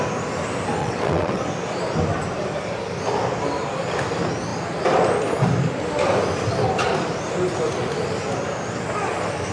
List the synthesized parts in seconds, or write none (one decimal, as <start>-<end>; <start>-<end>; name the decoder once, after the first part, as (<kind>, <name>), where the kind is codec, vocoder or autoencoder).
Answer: 0.8-1.4 (vocoder, WaveNeXt)